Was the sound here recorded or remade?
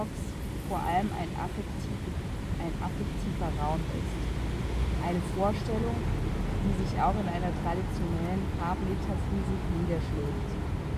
recorded